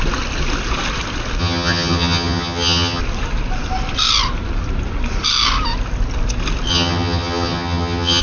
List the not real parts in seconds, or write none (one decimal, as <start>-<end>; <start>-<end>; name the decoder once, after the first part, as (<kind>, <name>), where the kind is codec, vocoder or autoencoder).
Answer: 1.4-3.0 (vocoder, HiFi-GAN); 6.7-8.2